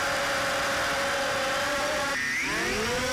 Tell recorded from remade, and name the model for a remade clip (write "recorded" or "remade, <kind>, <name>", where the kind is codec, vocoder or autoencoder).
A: recorded